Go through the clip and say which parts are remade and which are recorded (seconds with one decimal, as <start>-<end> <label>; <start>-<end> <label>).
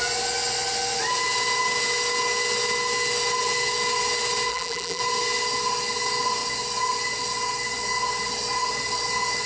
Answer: 0.0-4.5 recorded; 4.5-5.0 remade; 5.0-9.5 recorded